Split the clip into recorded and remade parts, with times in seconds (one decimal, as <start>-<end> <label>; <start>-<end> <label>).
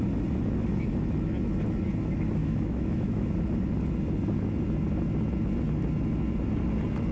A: 0.0-2.4 recorded; 2.4-3.3 remade; 3.3-7.1 recorded